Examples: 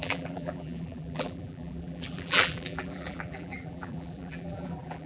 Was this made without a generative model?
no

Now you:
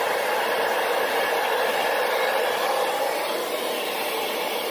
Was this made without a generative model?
yes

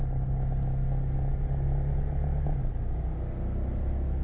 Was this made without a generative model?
yes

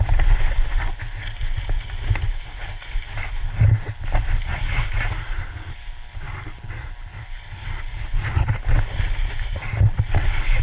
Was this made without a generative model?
yes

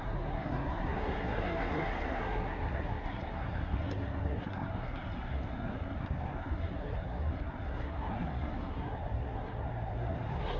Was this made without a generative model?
no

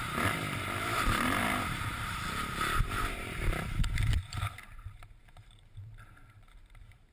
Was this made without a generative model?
no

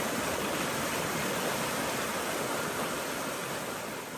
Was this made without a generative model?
yes